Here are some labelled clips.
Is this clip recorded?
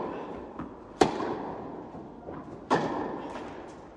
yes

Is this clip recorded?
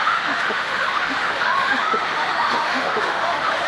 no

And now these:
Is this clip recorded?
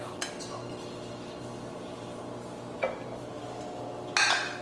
yes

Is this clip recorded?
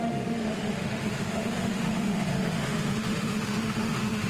no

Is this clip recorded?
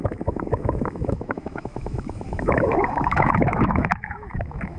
no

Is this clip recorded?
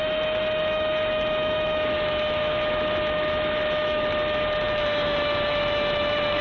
no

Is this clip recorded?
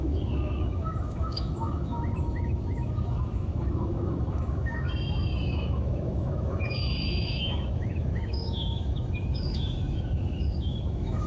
no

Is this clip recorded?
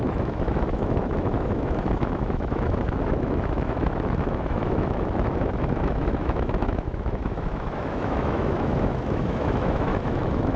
no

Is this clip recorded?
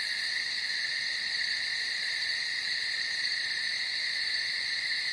yes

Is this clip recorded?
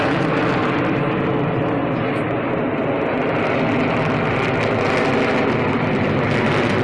yes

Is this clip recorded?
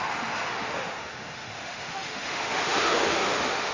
no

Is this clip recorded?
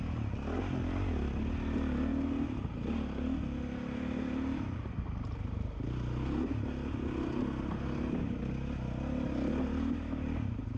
yes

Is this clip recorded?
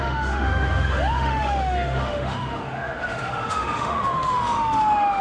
no